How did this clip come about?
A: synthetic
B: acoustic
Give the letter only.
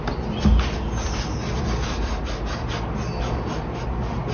B